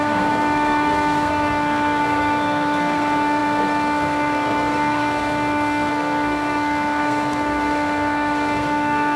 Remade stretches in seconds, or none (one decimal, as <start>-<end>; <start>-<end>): 0.0-9.2